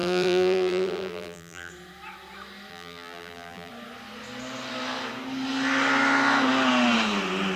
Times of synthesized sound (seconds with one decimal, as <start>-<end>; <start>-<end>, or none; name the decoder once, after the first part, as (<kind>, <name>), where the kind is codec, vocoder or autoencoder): 0.0-1.7 (vocoder, BigVGAN v2); 2.7-3.7